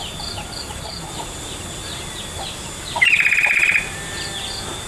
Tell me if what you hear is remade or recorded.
recorded